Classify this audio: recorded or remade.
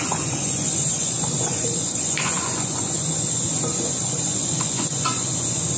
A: remade